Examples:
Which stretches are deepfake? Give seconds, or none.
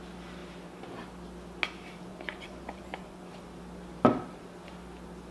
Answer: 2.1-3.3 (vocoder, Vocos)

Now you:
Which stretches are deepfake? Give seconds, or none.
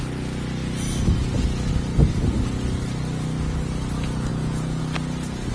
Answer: 4.3-4.8 (vocoder, Vocos)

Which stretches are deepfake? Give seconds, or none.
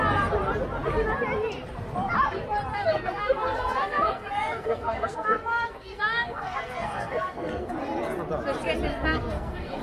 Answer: 2.7-7.7 (codec, SNAC); 8.9-9.8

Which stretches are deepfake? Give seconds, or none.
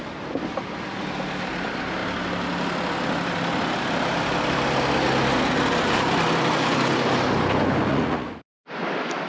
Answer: 7.9-8.7 (vocoder, Vocos)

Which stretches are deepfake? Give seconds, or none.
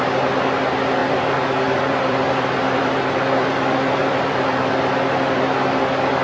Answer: 1.0-4.7 (vocoder, BigVGAN v2)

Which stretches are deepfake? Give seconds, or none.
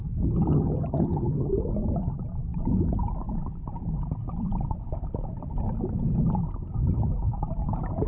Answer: 0.5-1.5 (vocoder, HiFi-GAN)